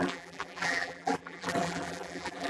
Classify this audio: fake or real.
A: fake